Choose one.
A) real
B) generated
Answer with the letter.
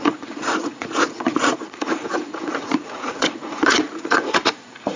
B